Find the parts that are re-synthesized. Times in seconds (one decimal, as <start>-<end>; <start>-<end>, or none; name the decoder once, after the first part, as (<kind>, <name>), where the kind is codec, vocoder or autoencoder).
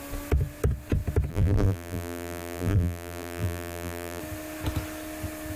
1.3-4.2 (vocoder, BigVGAN v2)